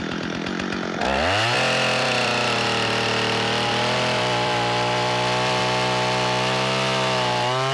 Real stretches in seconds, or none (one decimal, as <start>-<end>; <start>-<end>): 0.0-1.0; 5.6-7.7